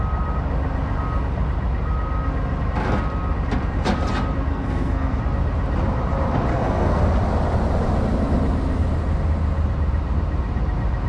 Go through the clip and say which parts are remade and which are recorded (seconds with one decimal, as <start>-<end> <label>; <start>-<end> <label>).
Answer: 0.0-4.5 recorded; 4.5-5.2 remade; 5.2-6.5 recorded; 6.5-7.0 remade; 7.0-11.1 recorded